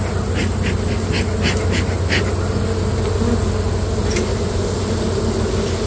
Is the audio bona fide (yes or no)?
yes